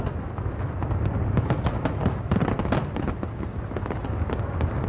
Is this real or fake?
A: real